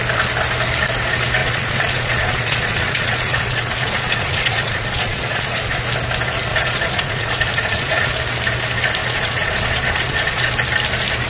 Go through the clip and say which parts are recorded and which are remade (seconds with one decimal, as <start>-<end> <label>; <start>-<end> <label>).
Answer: 0.0-1.4 recorded; 1.4-5.8 remade; 5.8-6.5 recorded; 6.5-8.2 remade; 8.2-9.0 recorded; 9.0-10.5 remade; 10.5-11.3 recorded